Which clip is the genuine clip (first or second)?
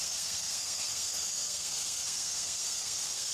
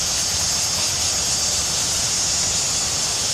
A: second